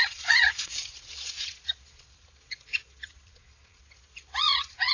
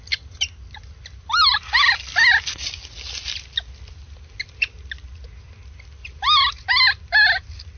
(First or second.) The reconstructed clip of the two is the first